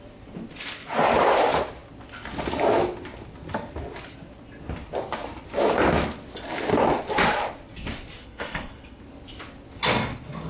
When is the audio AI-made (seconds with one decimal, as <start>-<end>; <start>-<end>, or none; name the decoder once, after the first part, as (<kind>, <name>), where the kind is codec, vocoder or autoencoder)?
8.2-9.0 (codec, SNAC)